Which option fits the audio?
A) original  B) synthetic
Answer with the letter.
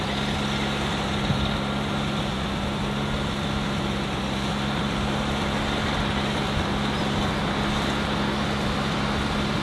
A